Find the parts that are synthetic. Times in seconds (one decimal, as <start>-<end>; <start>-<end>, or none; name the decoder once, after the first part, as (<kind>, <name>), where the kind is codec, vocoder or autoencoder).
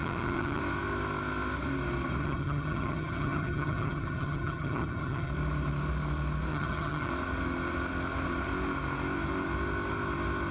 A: 0.0-0.6 (vocoder, HiFi-GAN); 2.2-5.3; 6.5-7.1